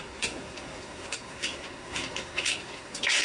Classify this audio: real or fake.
fake